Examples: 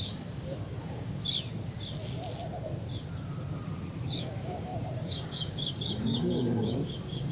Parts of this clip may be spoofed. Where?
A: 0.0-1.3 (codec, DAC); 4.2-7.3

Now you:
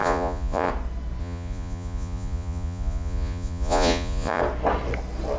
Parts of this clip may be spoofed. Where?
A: 0.0-0.7 (vocoder, Vocos); 1.2-4.4

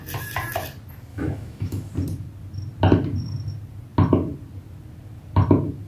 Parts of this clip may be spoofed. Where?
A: 1.1-1.9 (autoencoder, DAC-VAE)

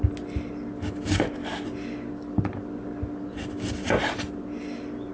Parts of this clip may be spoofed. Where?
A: none

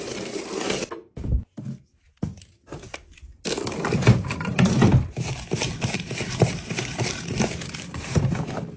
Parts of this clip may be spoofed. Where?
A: 0.0-8.8 (vocoder, BigVGAN v2)

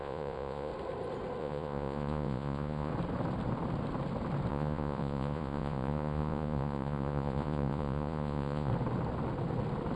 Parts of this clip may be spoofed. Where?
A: 0.0-0.7 (vocoder, Vocos); 1.4-2.9; 4.5-8.7

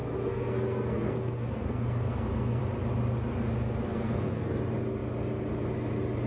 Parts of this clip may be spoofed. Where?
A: 0.0-2.6 (codec, SNAC); 3.9-4.5